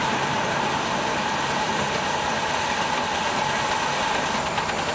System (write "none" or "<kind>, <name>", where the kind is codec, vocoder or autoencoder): none